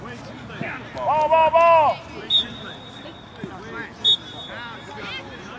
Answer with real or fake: real